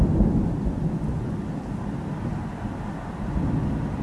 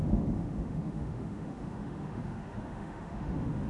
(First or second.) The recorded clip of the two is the first